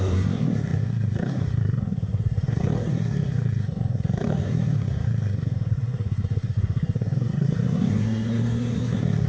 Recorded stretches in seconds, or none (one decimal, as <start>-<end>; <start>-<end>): none